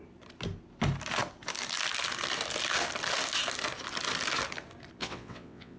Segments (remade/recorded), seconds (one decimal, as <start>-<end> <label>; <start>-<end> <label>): 0.0-5.0 recorded; 5.0-5.8 remade